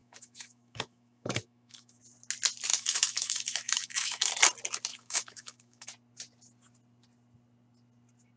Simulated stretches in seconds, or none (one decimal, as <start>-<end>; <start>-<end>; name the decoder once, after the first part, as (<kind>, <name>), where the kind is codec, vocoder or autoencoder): 0.0-2.0 (autoencoder, DAC-VAE); 2.7-4.3; 4.9-5.9